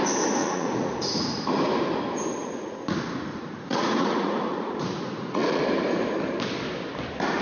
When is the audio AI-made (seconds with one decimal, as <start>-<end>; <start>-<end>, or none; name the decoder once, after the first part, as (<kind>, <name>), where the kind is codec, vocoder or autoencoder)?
0.4-1.4 (vocoder, Vocos); 2.4-5.6